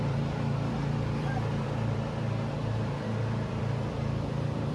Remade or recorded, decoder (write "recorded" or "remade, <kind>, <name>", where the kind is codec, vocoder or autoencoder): remade, vocoder, BigVGAN v2